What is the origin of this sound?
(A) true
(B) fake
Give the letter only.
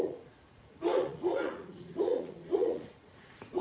B